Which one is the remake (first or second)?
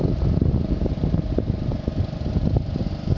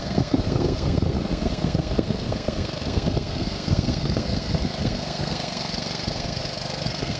second